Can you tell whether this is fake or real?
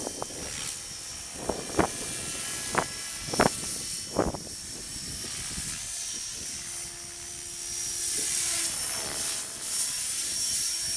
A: real